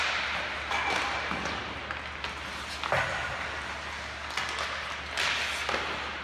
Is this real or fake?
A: real